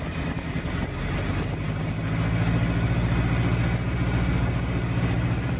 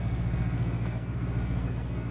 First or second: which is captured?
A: first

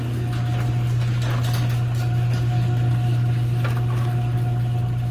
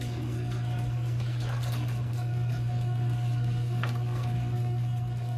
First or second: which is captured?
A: first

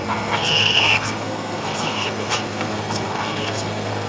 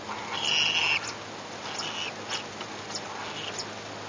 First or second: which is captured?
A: second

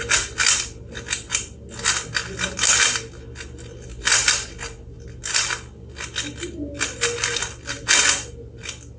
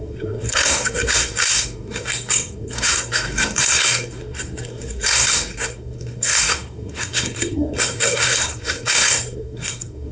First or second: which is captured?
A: first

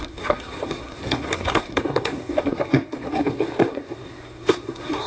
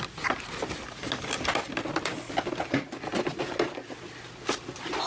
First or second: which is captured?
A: second